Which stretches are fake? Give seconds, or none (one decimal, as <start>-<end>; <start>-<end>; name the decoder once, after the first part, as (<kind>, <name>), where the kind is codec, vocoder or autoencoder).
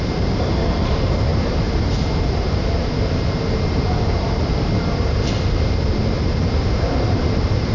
0.0-7.7 (vocoder, BigVGAN v2)